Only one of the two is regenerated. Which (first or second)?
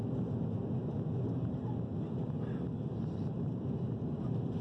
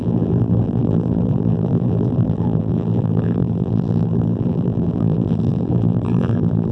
second